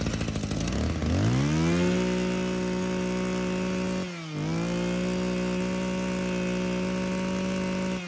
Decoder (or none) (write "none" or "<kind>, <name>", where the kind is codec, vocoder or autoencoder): none